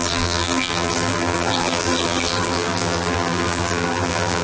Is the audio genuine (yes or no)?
no